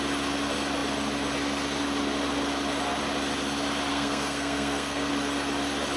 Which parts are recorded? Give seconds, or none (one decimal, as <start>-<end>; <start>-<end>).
0.0-3.9; 5.1-6.0